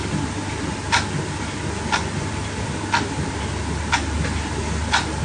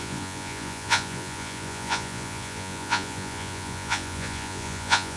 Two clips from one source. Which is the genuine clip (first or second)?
first